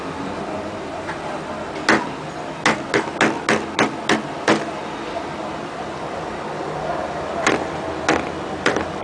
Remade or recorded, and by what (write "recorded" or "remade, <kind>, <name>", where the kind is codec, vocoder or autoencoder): recorded